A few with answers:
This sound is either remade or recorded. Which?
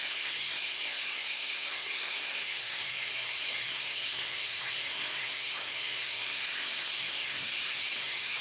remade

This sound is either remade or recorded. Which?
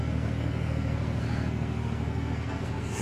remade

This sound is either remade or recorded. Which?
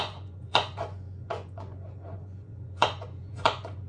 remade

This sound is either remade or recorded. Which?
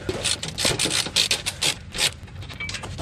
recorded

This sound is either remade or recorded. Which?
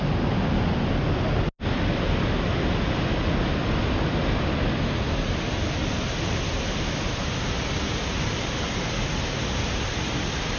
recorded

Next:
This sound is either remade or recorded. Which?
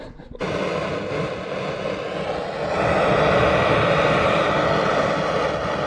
recorded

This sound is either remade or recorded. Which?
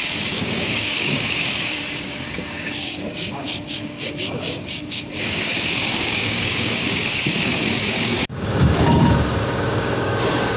remade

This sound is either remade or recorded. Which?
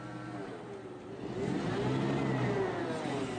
recorded